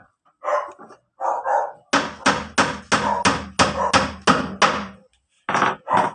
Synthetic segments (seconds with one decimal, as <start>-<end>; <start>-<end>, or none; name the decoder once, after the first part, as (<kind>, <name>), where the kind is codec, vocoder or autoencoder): none